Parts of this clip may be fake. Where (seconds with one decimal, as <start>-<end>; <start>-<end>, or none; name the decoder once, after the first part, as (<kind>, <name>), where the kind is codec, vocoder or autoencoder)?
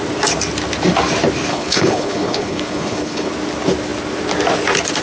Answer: 1.5-3.3 (codec, HILCodec)